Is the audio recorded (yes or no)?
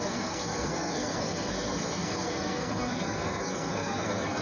no